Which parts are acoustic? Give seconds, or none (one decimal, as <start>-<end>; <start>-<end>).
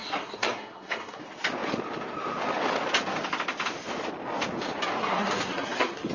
1.2-5.0